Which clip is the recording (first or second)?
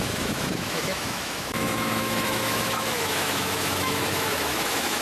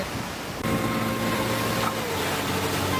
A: second